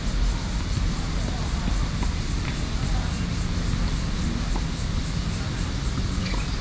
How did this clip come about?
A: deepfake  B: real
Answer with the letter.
B